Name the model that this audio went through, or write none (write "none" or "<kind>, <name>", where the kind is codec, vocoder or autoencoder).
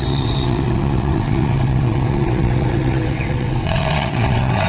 vocoder, WaveNeXt